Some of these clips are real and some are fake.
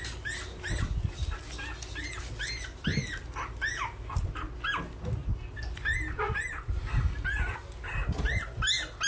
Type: real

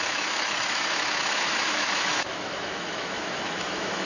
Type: fake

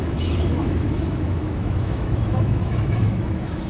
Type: fake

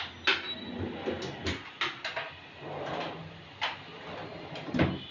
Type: real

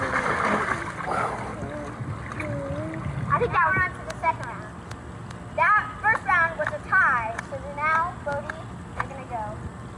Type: real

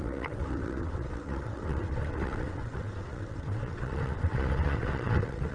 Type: fake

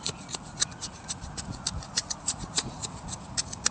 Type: fake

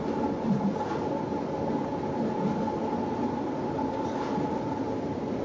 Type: real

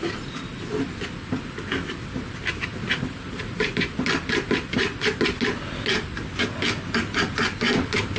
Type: real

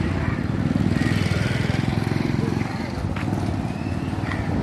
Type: real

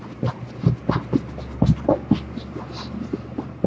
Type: real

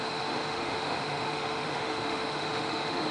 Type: fake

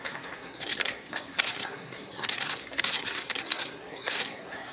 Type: fake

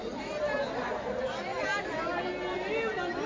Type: real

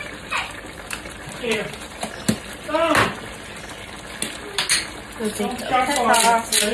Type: real